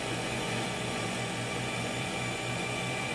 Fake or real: fake